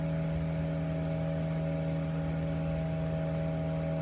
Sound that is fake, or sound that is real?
real